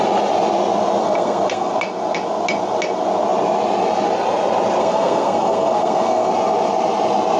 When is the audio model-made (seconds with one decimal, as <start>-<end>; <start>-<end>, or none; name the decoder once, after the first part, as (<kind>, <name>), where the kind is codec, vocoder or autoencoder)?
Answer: 1.0-1.7 (codec, SNAC); 4.8-6.3